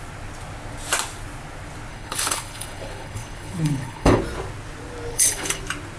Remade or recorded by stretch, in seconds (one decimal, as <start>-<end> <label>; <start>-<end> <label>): 0.0-1.9 recorded; 1.9-4.2 remade; 4.2-5.1 recorded; 5.1-5.6 remade; 5.6-6.0 recorded